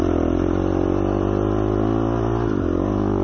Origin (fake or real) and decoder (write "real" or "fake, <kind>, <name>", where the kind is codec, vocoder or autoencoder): real